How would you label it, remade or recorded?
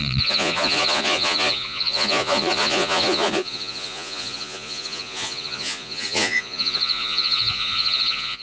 remade